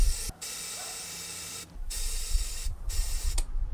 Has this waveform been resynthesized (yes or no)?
no